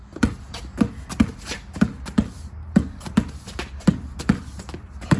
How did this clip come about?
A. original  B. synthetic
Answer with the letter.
A